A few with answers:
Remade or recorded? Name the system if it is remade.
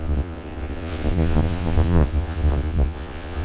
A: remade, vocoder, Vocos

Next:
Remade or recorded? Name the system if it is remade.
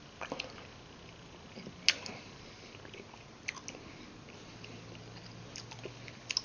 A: recorded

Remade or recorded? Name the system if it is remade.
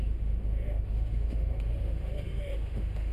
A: remade, autoencoder, DAC-VAE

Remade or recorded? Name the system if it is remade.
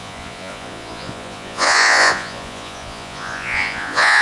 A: remade, vocoder, Vocos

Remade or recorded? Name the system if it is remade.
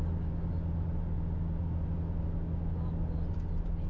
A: recorded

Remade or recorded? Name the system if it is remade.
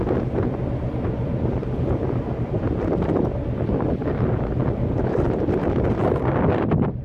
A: recorded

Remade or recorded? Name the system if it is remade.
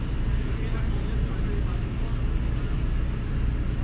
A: recorded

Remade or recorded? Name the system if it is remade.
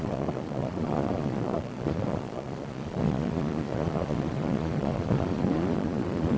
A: remade, vocoder, Vocos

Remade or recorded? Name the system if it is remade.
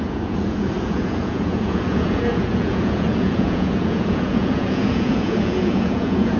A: remade, vocoder, Vocos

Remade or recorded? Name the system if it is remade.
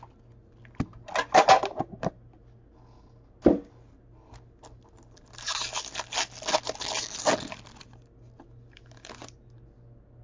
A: recorded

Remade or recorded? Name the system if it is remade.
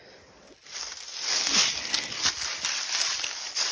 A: recorded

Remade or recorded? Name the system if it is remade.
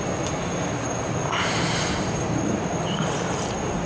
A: recorded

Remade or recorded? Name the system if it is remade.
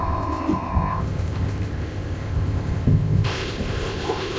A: remade, codec, ZipCodec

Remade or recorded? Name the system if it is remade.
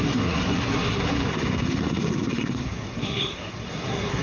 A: remade, codec, SNAC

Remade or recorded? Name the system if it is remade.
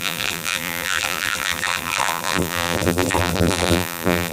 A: remade, vocoder, BigVGAN v2